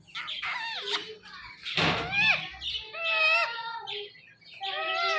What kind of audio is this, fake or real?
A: real